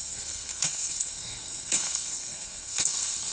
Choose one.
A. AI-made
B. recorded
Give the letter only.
A